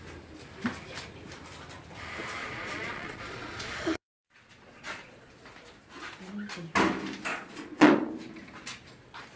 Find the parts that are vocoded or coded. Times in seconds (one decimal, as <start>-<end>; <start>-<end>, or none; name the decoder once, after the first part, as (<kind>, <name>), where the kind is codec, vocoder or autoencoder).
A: 2.4-5.3 (vocoder, Vocos); 7.3-8.1